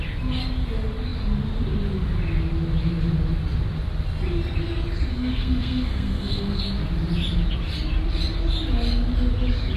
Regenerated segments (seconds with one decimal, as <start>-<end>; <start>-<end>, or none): 5.1-6.6